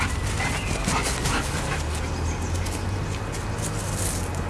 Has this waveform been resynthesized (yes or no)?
no